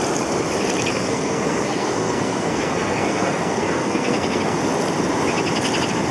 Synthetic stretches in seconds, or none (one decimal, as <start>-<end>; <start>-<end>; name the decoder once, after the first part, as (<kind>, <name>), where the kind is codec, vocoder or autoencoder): 0.9-4.6 (codec, SNAC)